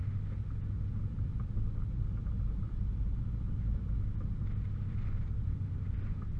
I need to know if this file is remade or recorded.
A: recorded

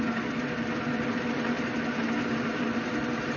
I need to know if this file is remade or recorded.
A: recorded